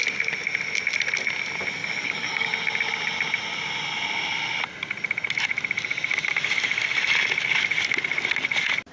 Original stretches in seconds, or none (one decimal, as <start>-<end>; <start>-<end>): 0.0-1.8; 2.5-8.9